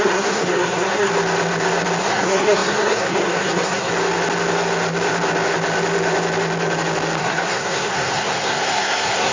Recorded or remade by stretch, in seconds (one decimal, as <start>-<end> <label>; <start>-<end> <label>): 0.0-1.1 remade; 1.1-2.0 recorded; 2.0-3.9 remade; 3.9-7.2 recorded; 7.2-9.3 remade